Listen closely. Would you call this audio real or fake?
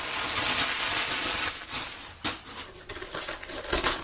real